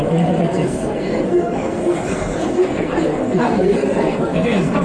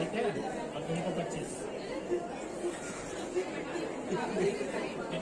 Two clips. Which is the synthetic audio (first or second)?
first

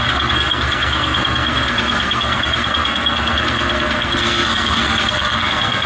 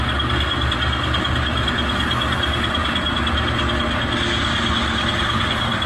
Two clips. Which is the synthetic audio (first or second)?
first